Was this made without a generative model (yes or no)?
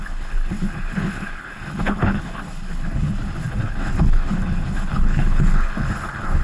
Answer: no